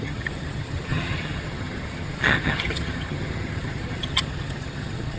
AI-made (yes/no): yes